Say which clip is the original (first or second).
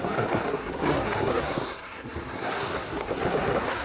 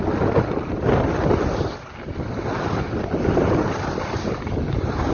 second